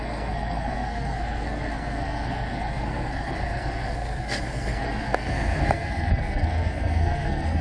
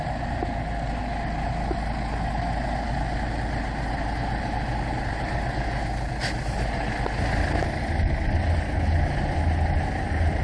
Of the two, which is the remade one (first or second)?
first